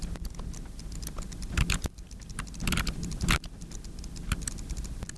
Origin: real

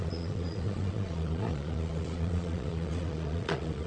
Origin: fake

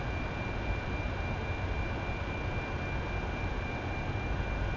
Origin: real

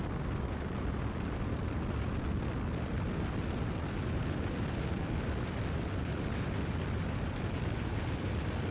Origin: fake